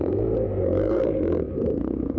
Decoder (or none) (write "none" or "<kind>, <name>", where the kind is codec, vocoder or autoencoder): codec, SNAC